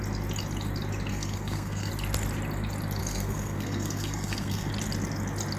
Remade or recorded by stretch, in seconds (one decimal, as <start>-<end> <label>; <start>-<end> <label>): 0.0-1.1 recorded; 1.1-1.9 remade; 1.9-3.0 recorded; 3.0-4.7 remade; 4.7-5.6 recorded

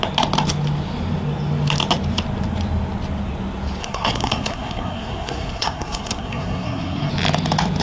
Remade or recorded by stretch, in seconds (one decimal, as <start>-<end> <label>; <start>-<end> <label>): 0.0-3.8 recorded; 3.8-7.1 remade; 7.1-7.8 recorded